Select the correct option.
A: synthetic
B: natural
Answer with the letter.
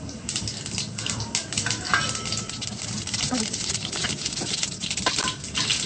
B